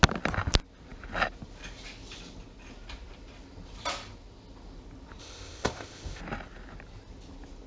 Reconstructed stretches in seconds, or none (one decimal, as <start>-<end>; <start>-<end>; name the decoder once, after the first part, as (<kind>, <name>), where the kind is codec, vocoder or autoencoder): 5.2-6.2 (codec, ZipCodec)